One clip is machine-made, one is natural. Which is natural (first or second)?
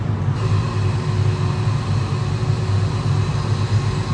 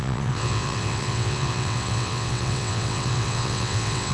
first